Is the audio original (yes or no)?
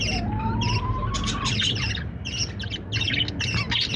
yes